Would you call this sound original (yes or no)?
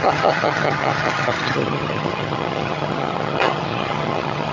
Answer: no